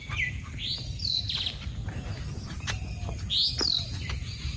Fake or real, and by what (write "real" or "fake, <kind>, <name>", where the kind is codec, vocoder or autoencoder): real